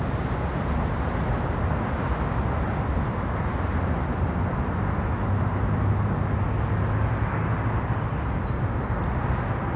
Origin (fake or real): real